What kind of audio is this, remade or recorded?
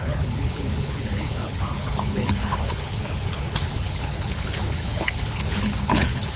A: remade